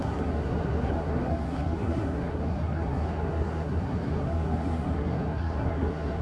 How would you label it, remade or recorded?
remade